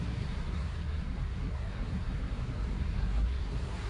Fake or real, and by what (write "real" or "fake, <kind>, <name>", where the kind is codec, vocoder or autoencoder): fake, codec, SNAC